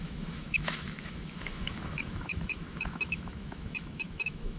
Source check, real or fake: fake